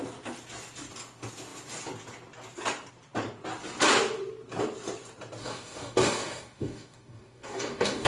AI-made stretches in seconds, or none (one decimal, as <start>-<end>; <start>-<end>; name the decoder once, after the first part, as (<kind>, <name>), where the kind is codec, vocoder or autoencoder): 5.4-8.1 (codec, DAC)